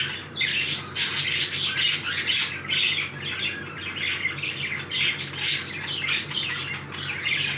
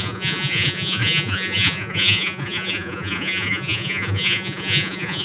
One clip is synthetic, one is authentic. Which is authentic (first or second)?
first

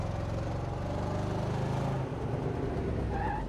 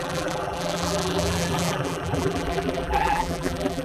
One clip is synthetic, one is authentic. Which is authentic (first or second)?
first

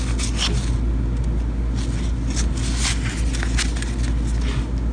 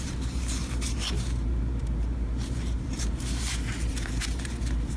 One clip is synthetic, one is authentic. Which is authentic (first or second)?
first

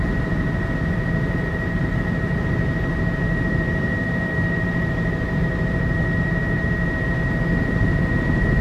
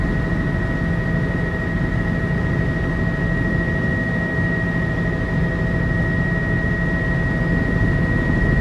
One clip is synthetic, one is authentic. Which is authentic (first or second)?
second